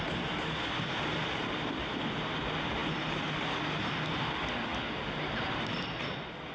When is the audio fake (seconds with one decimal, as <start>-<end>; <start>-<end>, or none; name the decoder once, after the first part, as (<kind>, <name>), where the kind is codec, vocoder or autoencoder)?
none